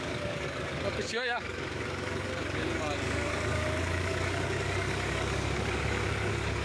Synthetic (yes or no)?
yes